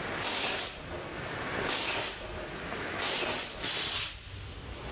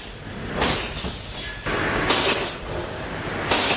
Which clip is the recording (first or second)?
second